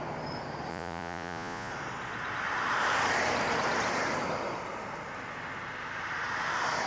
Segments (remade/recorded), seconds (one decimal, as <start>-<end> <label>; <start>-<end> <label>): 0.0-0.7 recorded; 0.7-1.7 remade; 1.7-6.9 recorded